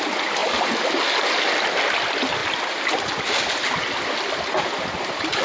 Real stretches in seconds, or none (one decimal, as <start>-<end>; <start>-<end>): 0.0-5.4

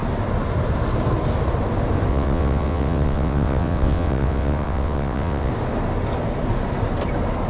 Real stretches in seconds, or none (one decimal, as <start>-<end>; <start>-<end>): 0.0-2.1; 5.5-7.5

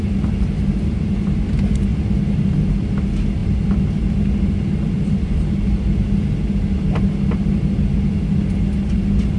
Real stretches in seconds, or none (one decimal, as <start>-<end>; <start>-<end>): 0.0-9.4